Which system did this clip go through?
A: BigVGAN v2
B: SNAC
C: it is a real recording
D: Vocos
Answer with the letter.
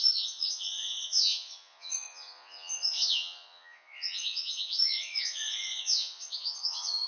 D